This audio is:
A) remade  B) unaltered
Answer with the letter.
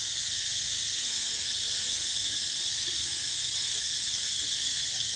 A